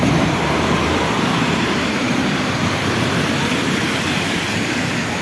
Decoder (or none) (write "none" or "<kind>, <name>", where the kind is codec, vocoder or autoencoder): vocoder, BigVGAN v2